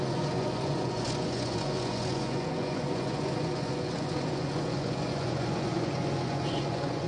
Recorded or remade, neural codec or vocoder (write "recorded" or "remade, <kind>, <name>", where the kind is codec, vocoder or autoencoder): remade, vocoder, Vocos